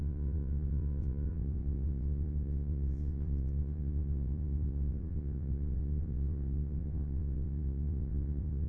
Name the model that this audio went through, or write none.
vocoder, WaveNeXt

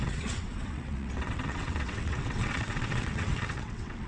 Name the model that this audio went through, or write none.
vocoder, WaveNeXt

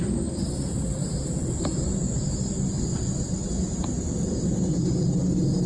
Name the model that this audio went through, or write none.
none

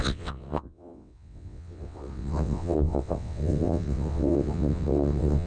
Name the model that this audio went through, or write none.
vocoder, WaveNeXt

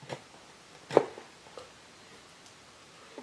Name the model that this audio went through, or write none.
none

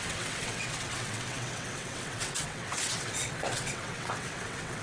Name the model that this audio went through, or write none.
vocoder, WaveNeXt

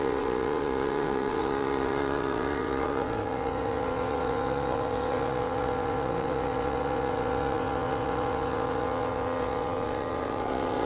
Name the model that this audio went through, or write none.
vocoder, WaveNeXt